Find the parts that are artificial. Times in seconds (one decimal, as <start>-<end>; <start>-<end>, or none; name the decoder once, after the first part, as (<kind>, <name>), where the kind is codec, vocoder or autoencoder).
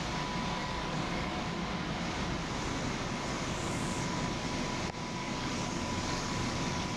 0.6-1.7 (codec, DAC); 3.3-4.5; 5.2-7.0